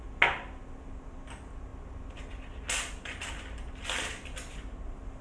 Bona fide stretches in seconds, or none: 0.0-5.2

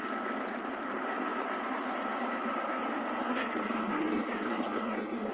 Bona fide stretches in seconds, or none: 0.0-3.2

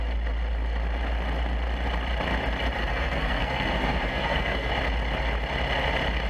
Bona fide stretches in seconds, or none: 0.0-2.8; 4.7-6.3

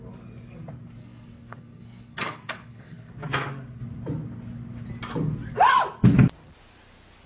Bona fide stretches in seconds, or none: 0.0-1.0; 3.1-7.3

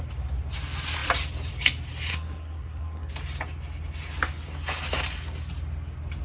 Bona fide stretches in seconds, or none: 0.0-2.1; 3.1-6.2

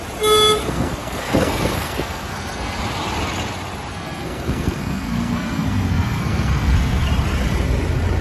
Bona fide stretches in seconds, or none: 0.0-0.6; 2.8-3.9; 7.1-8.2

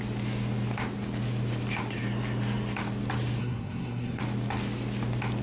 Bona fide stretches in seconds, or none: 0.0-3.4; 4.2-5.4

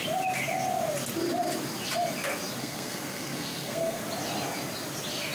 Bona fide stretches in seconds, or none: 0.0-2.6; 4.0-5.3